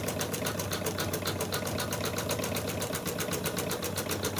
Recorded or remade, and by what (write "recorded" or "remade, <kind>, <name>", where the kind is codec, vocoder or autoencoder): recorded